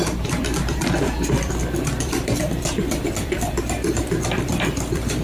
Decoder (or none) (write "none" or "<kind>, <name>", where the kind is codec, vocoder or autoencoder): vocoder, BigVGAN v2